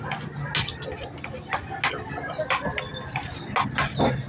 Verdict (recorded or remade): recorded